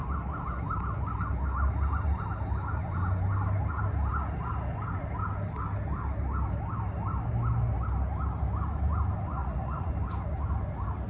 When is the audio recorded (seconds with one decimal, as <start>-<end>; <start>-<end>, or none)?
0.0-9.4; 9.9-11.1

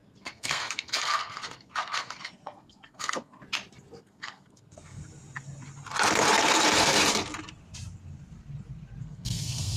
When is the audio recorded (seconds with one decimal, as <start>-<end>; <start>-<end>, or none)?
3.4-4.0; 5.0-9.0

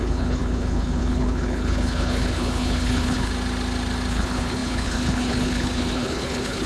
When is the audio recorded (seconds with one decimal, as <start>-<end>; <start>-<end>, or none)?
3.3-4.1